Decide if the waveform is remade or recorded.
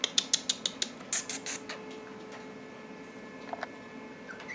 recorded